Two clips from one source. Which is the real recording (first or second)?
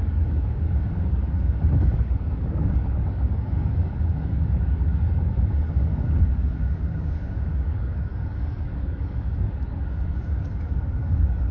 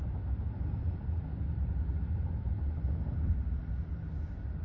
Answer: second